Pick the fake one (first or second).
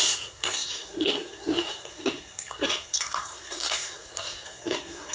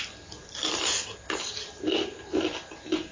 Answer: first